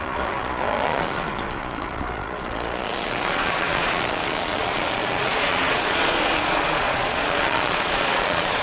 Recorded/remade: remade